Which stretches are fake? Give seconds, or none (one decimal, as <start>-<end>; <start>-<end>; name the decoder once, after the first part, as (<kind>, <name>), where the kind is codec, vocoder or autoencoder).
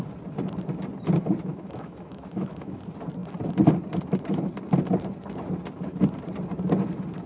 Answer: 1.5-2.8 (autoencoder, DAC-VAE)